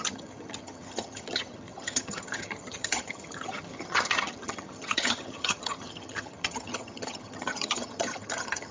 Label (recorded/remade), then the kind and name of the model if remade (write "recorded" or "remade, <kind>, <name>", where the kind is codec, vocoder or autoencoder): remade, vocoder, HiFi-GAN